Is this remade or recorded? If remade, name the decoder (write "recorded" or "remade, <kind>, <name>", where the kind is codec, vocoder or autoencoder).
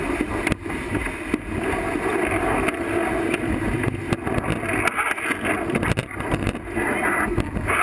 recorded